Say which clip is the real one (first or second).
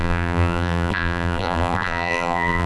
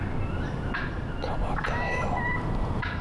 second